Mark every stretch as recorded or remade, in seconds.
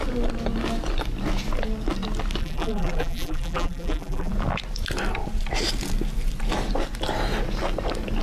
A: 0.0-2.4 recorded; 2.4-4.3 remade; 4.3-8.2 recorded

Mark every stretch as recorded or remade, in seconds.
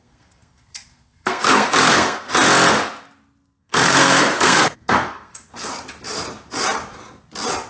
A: 0.0-2.3 remade; 2.3-3.6 recorded; 3.6-5.7 remade; 5.7-7.7 recorded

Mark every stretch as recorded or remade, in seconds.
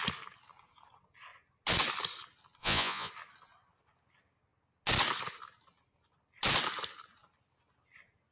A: 0.0-2.6 recorded; 2.6-3.1 remade; 3.1-8.3 recorded